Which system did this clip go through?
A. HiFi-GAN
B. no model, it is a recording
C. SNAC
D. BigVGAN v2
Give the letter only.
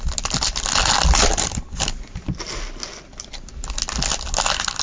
B